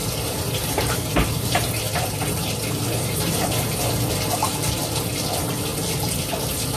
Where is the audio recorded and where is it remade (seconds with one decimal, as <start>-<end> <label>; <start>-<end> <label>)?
0.0-4.1 remade; 4.1-6.8 recorded